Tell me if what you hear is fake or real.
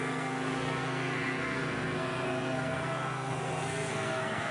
fake